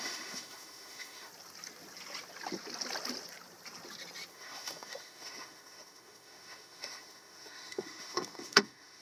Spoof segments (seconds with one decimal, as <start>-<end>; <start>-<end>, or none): 0.0-1.3; 4.3-9.0